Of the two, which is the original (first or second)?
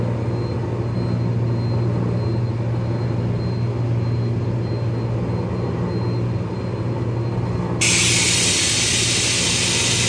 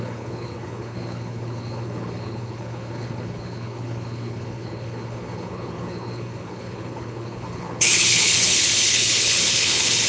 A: first